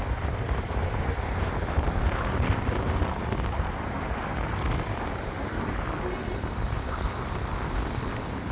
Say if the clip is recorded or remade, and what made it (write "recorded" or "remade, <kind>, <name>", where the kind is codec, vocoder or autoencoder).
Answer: recorded